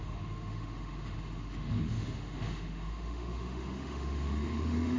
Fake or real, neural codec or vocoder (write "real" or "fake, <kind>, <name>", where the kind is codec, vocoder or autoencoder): fake, autoencoder, DAC-VAE